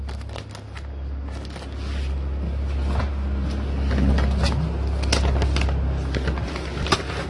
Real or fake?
real